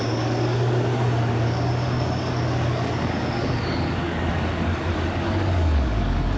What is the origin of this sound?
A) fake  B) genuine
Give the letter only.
A